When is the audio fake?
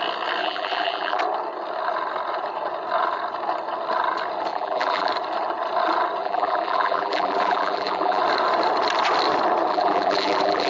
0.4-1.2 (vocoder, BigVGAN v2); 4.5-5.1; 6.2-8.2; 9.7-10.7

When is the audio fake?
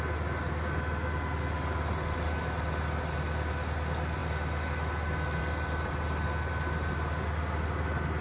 none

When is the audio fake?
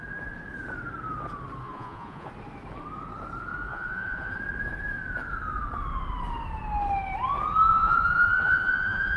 1.6-2.3 (vocoder, Vocos); 3.7-4.4; 7.7-9.2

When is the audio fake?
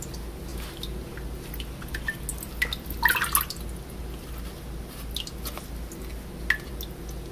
none